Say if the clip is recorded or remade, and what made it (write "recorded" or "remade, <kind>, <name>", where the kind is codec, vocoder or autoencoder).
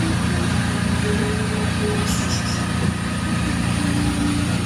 recorded